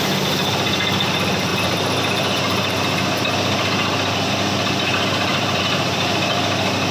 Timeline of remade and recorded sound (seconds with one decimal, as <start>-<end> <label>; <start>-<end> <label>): 0.0-6.9 recorded